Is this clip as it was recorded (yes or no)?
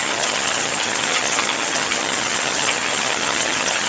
no